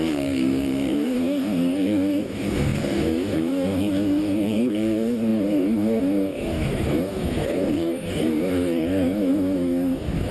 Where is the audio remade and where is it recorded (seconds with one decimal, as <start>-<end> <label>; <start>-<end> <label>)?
0.0-10.3 remade